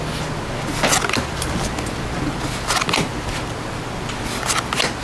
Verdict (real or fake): real